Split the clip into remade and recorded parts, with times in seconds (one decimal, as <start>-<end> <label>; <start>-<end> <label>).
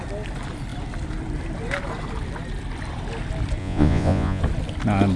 0.0-3.6 recorded; 3.6-4.4 remade; 4.4-5.2 recorded